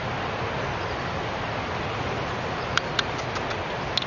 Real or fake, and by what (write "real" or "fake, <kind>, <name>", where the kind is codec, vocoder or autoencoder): real